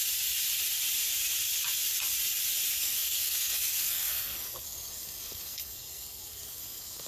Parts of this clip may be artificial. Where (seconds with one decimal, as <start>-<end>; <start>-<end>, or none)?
2.8-7.1